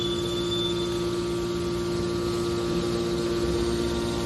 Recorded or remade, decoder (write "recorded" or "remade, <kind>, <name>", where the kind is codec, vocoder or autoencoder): recorded